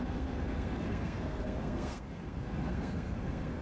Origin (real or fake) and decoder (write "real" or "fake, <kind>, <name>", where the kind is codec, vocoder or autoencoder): fake, codec, SNAC